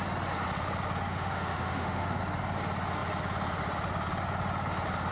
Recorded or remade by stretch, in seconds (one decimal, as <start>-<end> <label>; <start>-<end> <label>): 0.0-1.1 recorded; 1.1-2.2 remade; 2.2-5.1 recorded